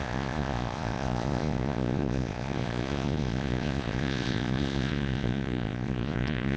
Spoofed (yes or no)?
yes